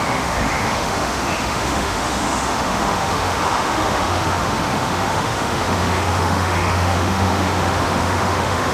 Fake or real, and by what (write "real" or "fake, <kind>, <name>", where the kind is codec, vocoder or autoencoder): fake, autoencoder, DAC-VAE